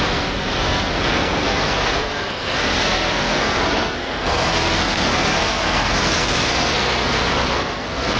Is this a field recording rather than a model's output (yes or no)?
no